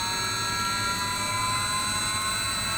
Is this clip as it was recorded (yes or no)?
yes